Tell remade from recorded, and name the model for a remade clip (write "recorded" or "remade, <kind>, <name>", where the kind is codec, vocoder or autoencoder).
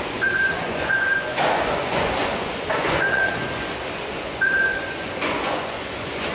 remade, vocoder, Vocos